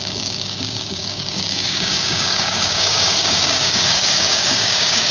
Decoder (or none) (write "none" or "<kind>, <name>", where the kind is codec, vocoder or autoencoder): codec, DAC